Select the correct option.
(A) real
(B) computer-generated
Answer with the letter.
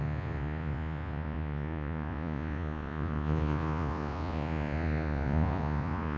B